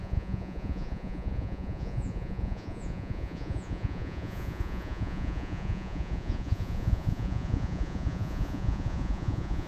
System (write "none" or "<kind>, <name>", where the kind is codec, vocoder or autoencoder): vocoder, Vocos